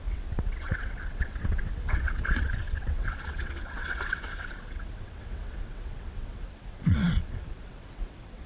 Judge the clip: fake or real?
fake